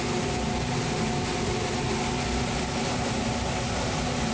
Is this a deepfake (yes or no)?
no